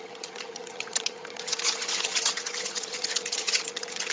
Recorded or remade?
remade